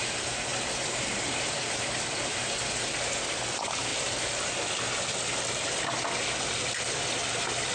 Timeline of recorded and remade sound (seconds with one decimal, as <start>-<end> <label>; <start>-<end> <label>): 0.0-0.5 recorded; 0.5-1.9 remade; 1.9-3.9 recorded; 3.9-4.5 remade; 4.5-7.7 recorded